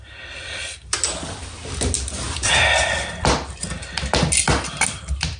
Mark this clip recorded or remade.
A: recorded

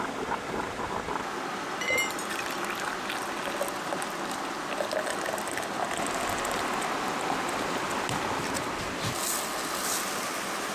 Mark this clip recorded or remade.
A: recorded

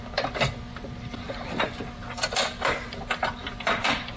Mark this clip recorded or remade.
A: recorded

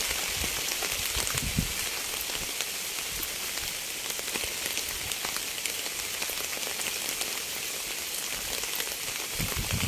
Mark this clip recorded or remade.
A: recorded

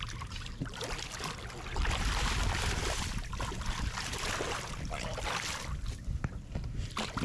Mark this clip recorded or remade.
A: remade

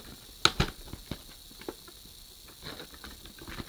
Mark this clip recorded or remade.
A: recorded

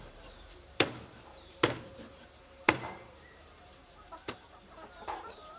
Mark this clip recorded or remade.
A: remade